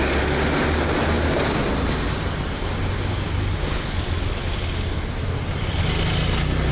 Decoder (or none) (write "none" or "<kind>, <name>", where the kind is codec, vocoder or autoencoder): none